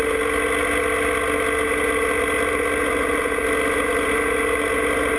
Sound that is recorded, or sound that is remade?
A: recorded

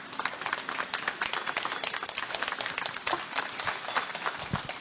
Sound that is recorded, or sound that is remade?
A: recorded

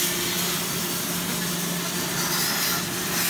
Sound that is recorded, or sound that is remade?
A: recorded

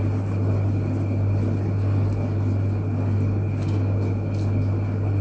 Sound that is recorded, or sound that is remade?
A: recorded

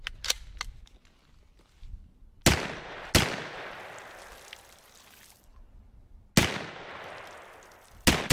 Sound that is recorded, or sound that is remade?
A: recorded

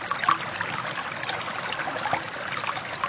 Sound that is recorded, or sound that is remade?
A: recorded